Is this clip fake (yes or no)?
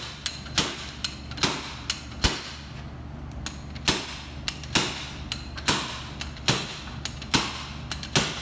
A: no